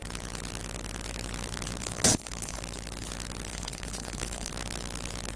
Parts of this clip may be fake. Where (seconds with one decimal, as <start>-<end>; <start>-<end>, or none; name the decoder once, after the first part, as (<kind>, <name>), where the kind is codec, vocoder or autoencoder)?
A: 1.8-2.6 (codec, HILCodec); 3.5-4.5